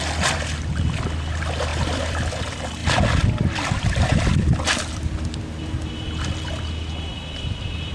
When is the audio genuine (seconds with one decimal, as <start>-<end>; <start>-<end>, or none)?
0.0-1.7; 2.4-7.9